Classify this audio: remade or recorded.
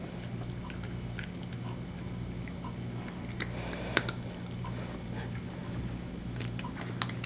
recorded